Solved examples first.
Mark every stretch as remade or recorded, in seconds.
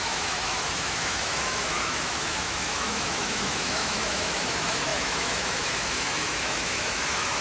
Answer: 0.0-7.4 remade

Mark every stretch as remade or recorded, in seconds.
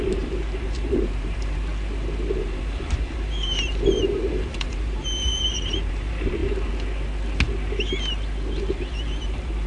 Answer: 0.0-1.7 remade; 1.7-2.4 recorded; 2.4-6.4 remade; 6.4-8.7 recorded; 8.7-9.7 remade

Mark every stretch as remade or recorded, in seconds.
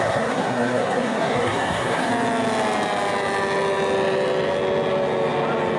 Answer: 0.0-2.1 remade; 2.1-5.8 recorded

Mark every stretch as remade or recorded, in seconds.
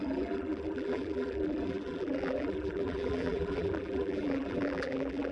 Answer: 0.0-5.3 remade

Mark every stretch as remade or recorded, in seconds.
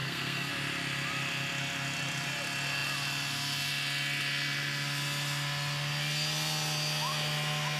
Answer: 0.0-0.5 remade; 0.5-7.8 recorded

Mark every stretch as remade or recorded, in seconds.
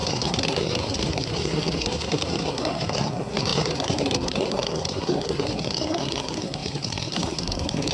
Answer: 0.0-7.9 remade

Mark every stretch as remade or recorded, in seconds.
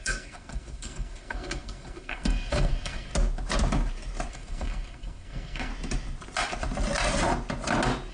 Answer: 0.0-3.1 remade; 3.1-4.3 recorded; 4.3-5.7 remade; 5.7-8.1 recorded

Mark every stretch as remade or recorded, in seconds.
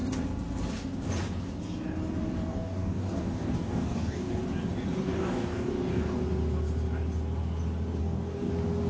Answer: 0.0-2.5 recorded; 2.5-4.4 remade; 4.4-5.0 recorded; 5.0-6.2 remade; 6.2-8.0 recorded; 8.0-8.5 remade; 8.5-8.9 recorded